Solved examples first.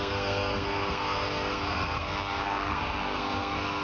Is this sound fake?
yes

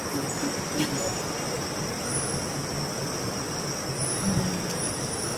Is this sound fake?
no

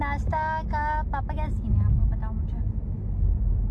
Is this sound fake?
no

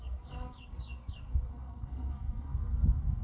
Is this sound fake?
yes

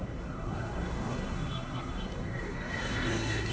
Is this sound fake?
yes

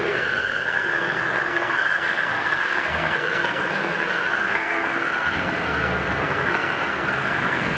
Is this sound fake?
yes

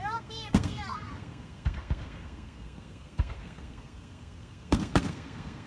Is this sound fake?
yes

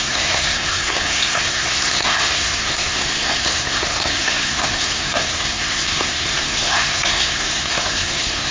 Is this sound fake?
yes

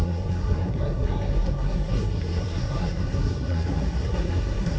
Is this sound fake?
yes